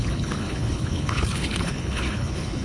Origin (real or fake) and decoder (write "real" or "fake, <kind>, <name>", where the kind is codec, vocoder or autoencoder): fake, codec, HILCodec